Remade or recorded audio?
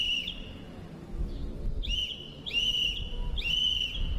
recorded